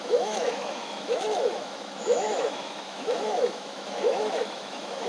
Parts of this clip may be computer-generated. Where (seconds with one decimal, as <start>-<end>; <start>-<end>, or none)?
0.0-5.1